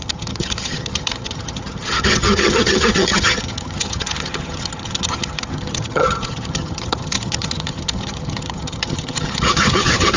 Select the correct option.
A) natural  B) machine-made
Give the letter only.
B